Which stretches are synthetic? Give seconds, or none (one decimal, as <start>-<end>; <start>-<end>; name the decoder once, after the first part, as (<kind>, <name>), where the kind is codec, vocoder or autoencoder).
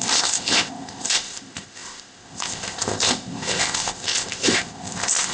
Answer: 0.0-5.3 (codec, ZipCodec)